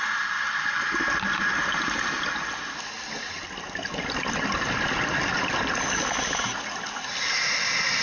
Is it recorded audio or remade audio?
recorded